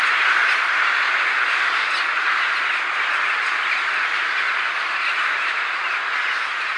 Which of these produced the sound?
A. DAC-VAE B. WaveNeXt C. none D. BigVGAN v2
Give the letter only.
C